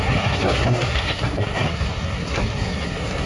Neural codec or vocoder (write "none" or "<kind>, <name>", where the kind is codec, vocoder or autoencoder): codec, SNAC